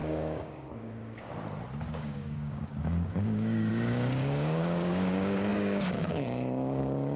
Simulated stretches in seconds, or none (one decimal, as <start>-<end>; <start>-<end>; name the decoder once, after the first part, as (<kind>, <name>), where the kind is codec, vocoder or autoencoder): 0.0-1.3 (codec, DAC); 1.9-7.2